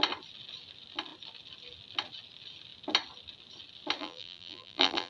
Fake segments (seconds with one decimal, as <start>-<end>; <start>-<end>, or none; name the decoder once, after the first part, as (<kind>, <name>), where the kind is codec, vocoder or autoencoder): 4.0-5.1 (vocoder, BigVGAN v2)